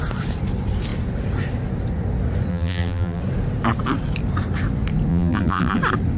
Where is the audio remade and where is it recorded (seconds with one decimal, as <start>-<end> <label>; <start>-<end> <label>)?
0.0-2.5 recorded; 2.5-3.2 remade; 3.2-5.1 recorded; 5.1-5.8 remade; 5.8-6.2 recorded